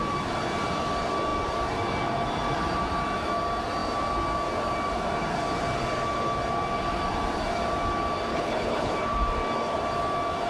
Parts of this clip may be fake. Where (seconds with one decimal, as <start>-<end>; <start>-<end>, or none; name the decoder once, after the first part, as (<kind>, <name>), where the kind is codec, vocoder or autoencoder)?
8.3-8.9 (codec, HILCodec)